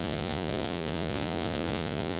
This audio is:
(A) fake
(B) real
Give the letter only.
A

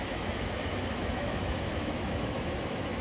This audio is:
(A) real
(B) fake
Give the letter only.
B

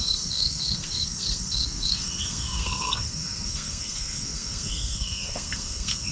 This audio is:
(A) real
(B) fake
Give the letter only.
B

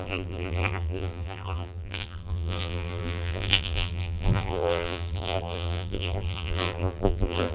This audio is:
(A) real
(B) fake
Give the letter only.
B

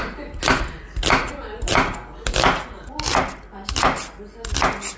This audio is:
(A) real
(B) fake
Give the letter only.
A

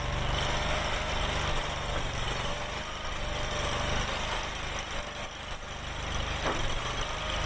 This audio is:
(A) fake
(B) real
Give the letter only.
B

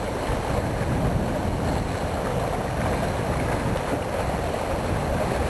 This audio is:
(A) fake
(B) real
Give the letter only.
B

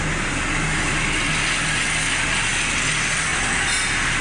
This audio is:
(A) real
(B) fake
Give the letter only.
A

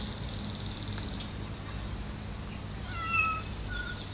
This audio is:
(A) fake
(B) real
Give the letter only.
B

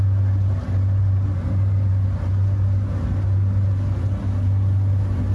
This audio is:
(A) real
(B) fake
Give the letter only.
A